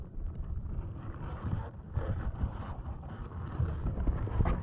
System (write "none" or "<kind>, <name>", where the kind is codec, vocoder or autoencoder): none